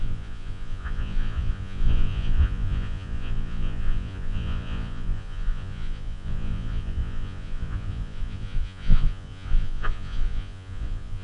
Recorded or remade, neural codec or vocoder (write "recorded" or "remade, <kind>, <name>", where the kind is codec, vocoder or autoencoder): remade, vocoder, Vocos